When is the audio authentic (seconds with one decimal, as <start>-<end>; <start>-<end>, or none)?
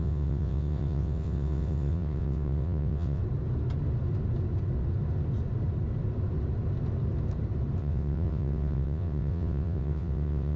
3.2-7.8